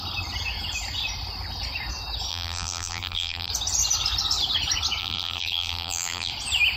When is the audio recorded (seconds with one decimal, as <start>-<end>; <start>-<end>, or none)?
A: 0.0-2.3; 3.5-5.0; 6.3-6.8